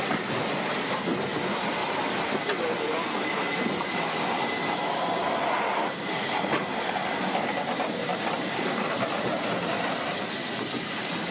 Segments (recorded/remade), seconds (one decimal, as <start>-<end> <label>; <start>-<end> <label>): 0.0-11.3 recorded